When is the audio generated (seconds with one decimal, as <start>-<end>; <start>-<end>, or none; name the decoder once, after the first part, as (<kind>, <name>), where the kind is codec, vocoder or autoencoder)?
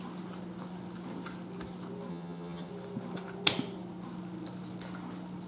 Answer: 2.1-2.7 (vocoder, HiFi-GAN)